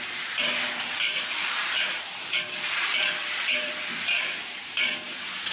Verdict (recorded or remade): remade